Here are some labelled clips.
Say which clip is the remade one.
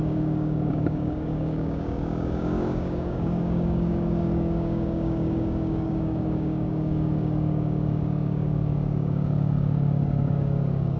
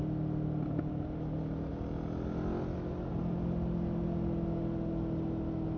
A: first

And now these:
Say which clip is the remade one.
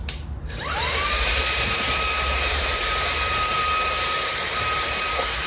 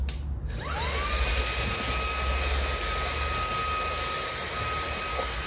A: first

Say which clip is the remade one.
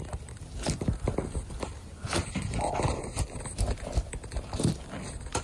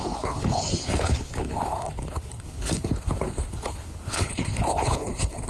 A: second